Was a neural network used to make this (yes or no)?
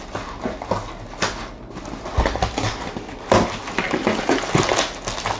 no